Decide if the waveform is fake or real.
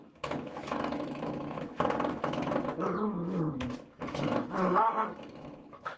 fake